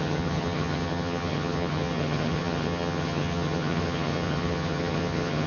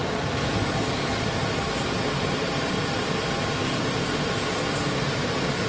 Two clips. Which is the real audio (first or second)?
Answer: second